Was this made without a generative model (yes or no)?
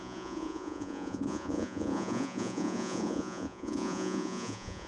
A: no